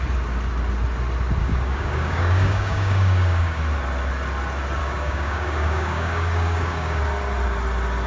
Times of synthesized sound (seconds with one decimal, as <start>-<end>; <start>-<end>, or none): 1.4-3.6; 4.8-7.0